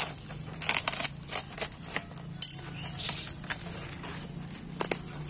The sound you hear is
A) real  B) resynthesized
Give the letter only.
A